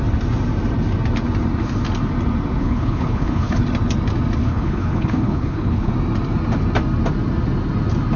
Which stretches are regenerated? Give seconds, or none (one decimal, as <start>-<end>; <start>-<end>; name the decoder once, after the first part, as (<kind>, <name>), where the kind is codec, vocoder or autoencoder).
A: 2.6-3.6 (codec, HILCodec); 4.4-5.9